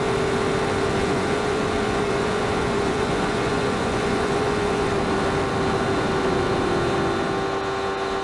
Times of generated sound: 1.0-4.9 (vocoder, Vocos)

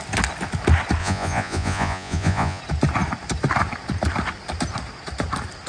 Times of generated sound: 1.0-2.6 (vocoder, Vocos)

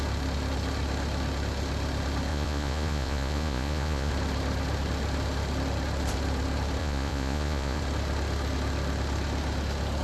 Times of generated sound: 2.3-4.1 (vocoder, Vocos); 6.8-7.8

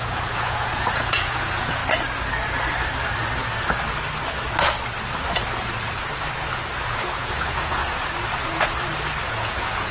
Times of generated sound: 0.0-1.8 (vocoder, Vocos); 6.9-7.8; 9.3-9.9

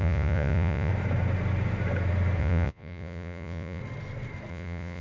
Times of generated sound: 0.0-0.9 (vocoder, Vocos); 2.4-3.8; 4.5-5.0